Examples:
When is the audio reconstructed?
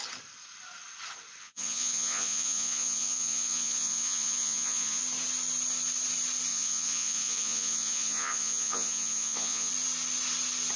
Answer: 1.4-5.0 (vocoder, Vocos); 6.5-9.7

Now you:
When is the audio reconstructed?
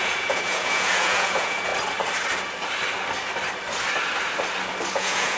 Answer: 0.0-1.7 (vocoder, Vocos); 4.9-5.4